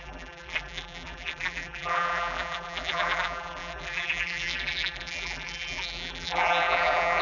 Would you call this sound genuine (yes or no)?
no